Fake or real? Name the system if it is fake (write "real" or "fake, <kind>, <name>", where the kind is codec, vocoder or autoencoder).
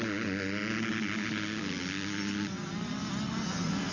real